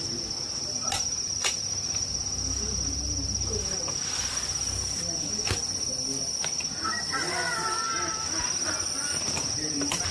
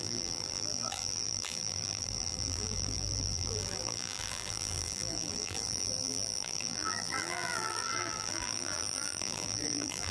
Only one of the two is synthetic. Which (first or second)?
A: second